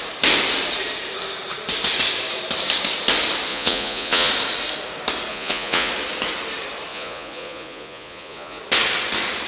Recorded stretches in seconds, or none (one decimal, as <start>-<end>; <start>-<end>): 0.0-3.5; 4.3-5.3; 5.9-6.9; 8.6-9.5